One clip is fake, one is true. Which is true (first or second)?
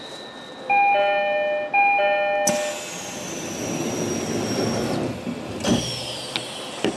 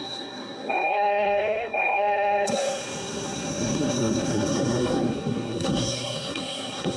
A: first